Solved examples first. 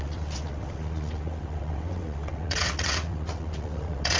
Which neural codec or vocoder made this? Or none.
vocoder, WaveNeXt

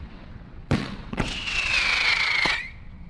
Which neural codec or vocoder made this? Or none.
vocoder, WaveNeXt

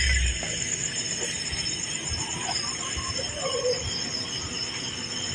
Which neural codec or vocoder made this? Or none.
none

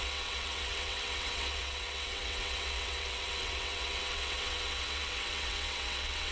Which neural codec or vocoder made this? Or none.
vocoder, WaveNeXt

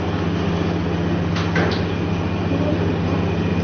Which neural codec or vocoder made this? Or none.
none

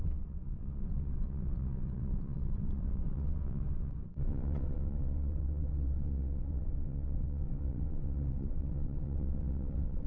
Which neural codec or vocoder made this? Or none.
vocoder, WaveNeXt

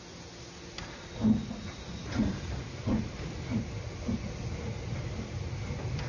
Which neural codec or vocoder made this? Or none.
none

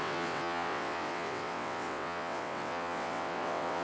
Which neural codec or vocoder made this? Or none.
vocoder, WaveNeXt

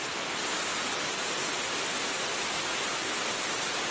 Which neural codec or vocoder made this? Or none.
none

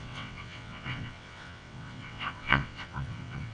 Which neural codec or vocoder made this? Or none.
vocoder, WaveNeXt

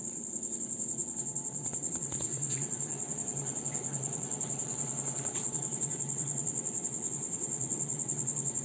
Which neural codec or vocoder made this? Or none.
vocoder, WaveNeXt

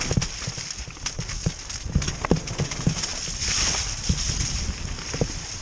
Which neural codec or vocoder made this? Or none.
none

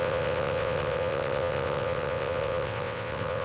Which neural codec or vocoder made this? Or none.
vocoder, WaveNeXt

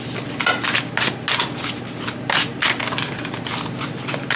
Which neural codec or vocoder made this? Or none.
none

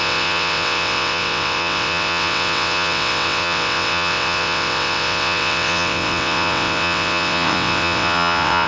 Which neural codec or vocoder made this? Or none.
vocoder, WaveNeXt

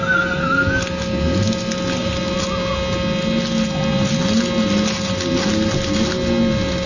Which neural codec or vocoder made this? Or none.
none